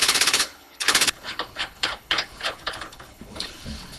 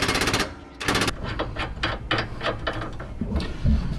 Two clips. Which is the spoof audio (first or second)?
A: first